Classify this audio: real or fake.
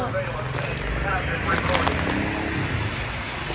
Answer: real